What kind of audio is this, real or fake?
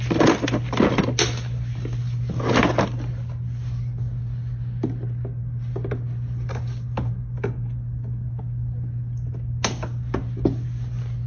real